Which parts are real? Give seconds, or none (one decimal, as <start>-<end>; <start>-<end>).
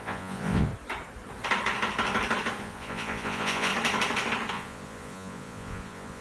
0.7-2.6; 3.7-4.5